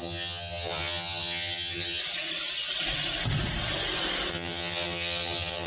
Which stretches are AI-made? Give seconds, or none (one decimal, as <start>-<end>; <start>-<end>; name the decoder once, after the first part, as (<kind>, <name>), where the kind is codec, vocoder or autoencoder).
0.0-2.0 (vocoder, HiFi-GAN); 4.3-5.7